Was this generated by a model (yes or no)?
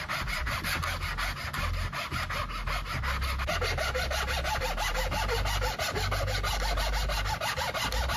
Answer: no